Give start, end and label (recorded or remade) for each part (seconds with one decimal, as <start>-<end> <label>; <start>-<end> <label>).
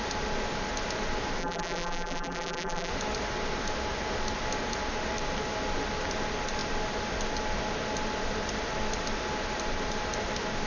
0.0-1.4 recorded; 1.4-2.9 remade; 2.9-10.7 recorded